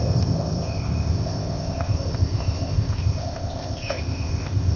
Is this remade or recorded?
remade